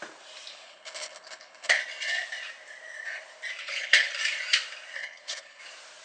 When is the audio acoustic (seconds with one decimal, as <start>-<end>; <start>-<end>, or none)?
0.0-0.5; 1.8-3.6; 4.1-5.0; 5.6-6.0